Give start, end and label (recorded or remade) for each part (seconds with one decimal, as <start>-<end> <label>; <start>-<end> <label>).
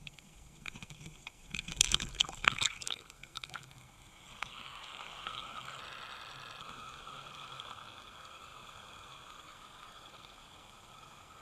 0.0-5.8 remade; 5.8-6.6 recorded; 6.6-11.4 remade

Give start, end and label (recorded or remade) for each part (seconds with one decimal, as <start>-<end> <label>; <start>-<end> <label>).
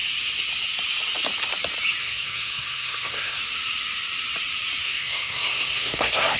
0.0-2.0 recorded; 2.0-3.4 remade; 3.4-4.8 recorded; 4.8-6.4 remade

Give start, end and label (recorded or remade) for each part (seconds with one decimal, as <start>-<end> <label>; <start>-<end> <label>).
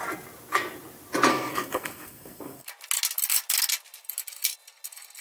0.0-1.3 recorded; 1.3-2.7 remade; 2.7-5.2 recorded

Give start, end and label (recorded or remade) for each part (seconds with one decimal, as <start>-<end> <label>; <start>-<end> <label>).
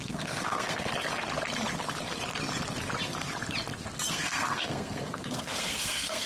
0.0-0.9 remade; 0.9-4.1 recorded; 4.1-6.3 remade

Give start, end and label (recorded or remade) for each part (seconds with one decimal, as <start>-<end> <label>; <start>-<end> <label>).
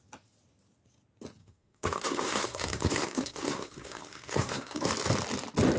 0.0-1.4 recorded; 1.4-4.9 remade; 4.9-5.8 recorded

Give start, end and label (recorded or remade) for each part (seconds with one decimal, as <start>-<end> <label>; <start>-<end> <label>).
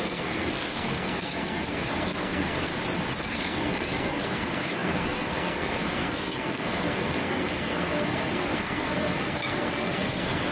0.0-2.7 remade; 2.7-3.2 recorded; 3.2-10.5 remade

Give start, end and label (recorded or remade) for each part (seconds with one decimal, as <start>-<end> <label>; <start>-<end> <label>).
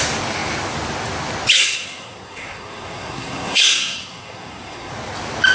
0.0-1.6 recorded; 1.6-4.9 remade; 4.9-5.5 recorded